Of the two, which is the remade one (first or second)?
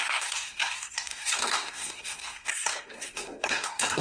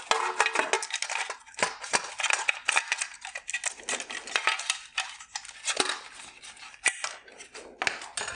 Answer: first